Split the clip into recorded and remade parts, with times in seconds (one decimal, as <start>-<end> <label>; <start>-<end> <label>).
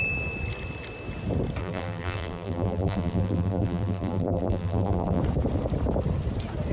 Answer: 0.0-1.6 recorded; 1.6-5.2 remade; 5.2-6.7 recorded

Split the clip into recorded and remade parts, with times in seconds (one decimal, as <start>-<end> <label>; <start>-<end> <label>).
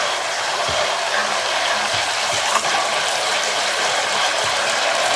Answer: 0.0-1.2 remade; 1.2-2.7 recorded; 2.7-5.2 remade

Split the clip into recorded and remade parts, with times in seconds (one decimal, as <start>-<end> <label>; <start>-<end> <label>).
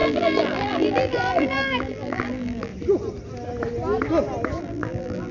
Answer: 0.0-2.7 remade; 2.7-4.6 recorded; 4.6-5.3 remade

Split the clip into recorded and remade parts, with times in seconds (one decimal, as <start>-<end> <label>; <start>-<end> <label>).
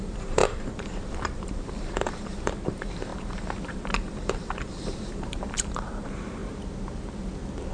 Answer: 0.0-6.4 remade; 6.4-7.7 recorded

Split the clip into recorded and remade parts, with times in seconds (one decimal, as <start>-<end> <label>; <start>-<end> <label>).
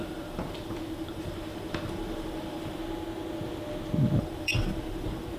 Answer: 0.0-2.8 remade; 2.8-4.2 recorded; 4.2-5.4 remade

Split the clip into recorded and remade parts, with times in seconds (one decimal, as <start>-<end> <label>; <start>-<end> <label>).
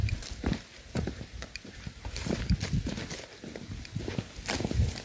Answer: 0.0-3.0 remade; 3.0-5.0 recorded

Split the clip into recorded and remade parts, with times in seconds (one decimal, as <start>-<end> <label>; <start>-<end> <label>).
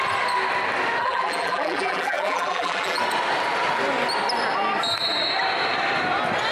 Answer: 0.0-1.0 recorded; 1.0-3.0 remade; 3.0-6.5 recorded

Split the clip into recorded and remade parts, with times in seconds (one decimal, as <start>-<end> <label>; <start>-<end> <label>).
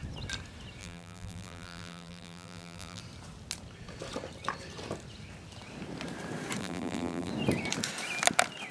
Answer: 0.0-0.8 recorded; 0.8-3.0 remade; 3.0-6.6 recorded; 6.6-7.3 remade; 7.3-8.7 recorded